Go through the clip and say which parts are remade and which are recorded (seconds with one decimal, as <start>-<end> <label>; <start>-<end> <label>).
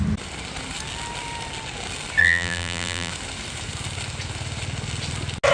0.0-2.2 recorded; 2.2-3.1 remade; 3.1-5.5 recorded